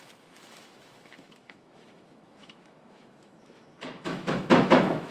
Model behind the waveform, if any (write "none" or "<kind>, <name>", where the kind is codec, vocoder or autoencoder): autoencoder, DAC-VAE